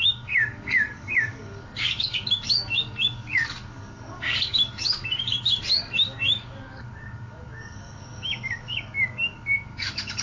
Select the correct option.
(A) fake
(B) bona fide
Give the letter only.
A